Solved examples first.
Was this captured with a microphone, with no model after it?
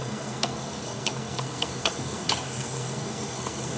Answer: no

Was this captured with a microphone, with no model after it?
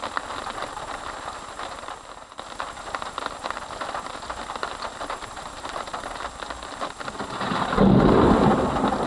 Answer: yes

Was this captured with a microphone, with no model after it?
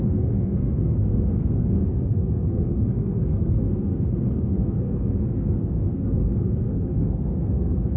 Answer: no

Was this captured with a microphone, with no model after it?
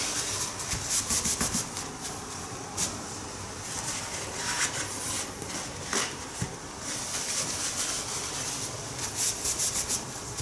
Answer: yes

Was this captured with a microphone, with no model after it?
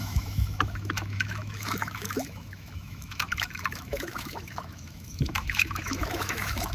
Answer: no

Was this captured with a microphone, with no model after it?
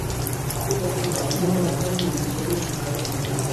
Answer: no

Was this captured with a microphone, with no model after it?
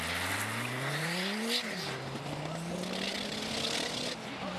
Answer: yes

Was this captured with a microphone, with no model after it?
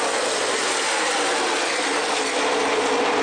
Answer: yes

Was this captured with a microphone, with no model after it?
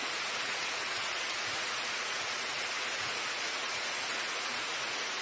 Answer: no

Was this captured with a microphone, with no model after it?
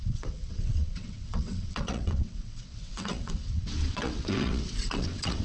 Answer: no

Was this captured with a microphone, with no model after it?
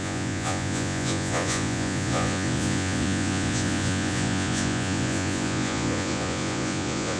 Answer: no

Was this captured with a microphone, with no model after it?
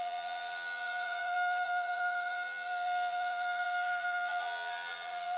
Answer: no